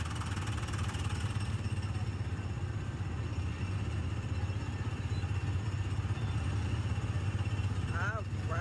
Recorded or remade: recorded